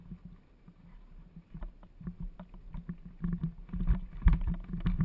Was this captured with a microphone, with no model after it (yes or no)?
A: yes